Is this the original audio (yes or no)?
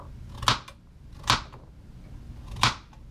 yes